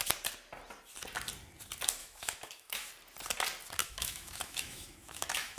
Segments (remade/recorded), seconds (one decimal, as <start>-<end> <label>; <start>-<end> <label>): 0.0-2.0 recorded; 2.0-2.9 remade; 2.9-3.8 recorded; 3.8-5.6 remade